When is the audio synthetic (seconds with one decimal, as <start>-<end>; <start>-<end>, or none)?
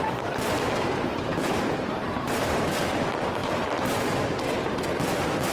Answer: 0.0-0.5; 1.3-2.8; 3.4-3.9